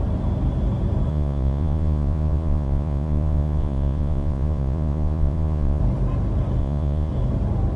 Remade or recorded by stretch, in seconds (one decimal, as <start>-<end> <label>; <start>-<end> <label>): 0.0-1.1 recorded; 1.1-5.8 remade; 5.8-6.6 recorded; 6.6-7.1 remade; 7.1-7.8 recorded